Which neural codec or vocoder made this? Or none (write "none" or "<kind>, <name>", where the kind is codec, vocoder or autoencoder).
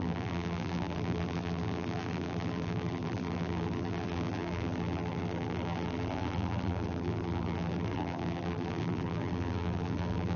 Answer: vocoder, BigVGAN v2